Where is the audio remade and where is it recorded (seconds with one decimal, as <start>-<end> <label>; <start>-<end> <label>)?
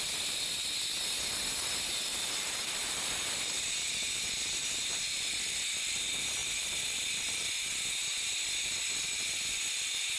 0.0-2.1 recorded; 2.1-2.9 remade; 2.9-10.2 recorded